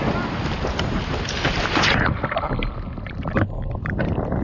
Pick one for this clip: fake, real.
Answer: real